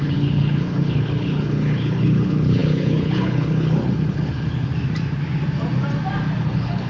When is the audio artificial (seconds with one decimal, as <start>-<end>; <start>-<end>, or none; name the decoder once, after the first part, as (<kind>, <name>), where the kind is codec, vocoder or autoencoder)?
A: 0.0-4.7 (codec, HILCodec); 6.4-6.9